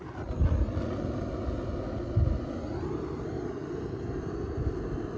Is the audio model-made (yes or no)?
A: no